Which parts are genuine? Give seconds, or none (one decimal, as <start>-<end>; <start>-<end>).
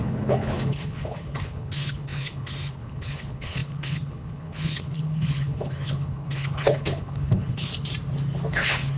7.7-8.5